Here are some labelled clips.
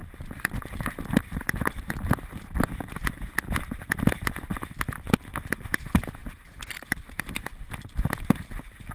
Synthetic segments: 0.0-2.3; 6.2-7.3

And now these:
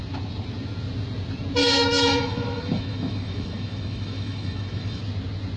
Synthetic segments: 1.6-5.0

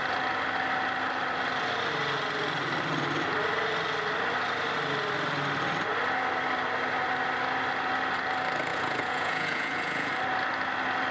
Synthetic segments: 8.7-10.1

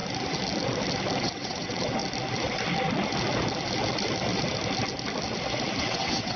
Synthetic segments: 1.2-2.0; 5.8-6.4

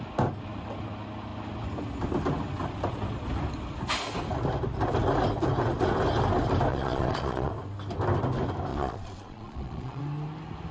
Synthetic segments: 6.7-7.5; 8.7-10.0